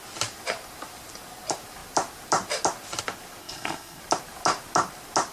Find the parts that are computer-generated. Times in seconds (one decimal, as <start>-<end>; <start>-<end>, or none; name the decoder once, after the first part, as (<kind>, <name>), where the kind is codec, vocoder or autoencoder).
3.4-4.0 (codec, SNAC)